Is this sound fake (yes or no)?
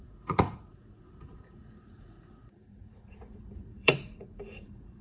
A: yes